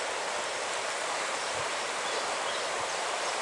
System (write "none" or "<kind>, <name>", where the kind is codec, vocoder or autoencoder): vocoder, BigVGAN v2